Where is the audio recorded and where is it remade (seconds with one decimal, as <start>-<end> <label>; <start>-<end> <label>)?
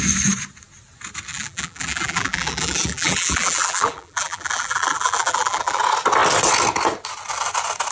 0.0-1.3 recorded; 1.3-5.8 remade; 5.8-7.9 recorded